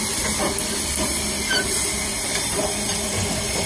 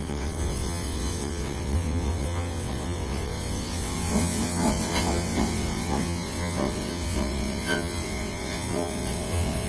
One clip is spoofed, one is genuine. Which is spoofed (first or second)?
second